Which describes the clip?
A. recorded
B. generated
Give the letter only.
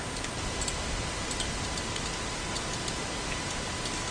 A